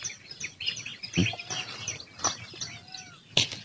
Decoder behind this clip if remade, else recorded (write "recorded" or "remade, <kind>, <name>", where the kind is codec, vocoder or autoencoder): recorded